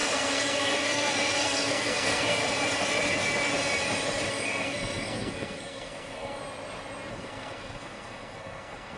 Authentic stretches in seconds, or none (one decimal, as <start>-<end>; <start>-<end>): 2.4-4.3; 6.4-7.1

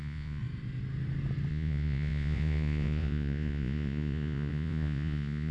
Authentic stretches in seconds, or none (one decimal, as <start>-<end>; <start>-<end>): 0.4-1.5

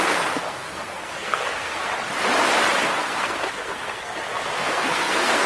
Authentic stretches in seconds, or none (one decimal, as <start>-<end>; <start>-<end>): 1.9-2.8

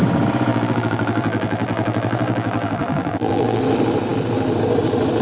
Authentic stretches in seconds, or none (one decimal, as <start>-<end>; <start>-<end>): 0.0-0.5; 3.6-5.2

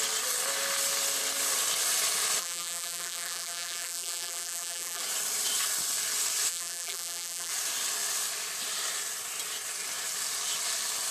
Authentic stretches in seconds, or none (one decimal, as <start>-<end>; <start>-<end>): 0.0-2.4; 5.0-6.5; 7.5-11.1